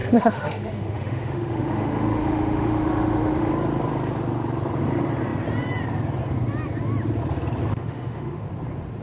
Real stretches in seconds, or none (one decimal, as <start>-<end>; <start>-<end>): 3.5-7.7; 8.5-9.0